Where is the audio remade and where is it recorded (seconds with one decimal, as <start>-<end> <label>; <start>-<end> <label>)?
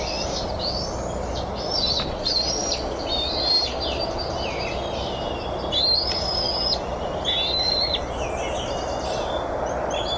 0.0-10.2 recorded